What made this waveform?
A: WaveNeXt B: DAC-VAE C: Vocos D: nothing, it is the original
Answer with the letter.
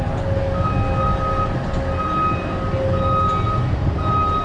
D